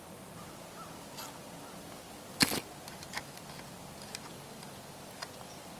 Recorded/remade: recorded